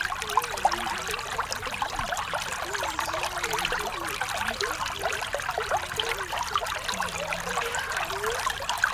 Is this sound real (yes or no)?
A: yes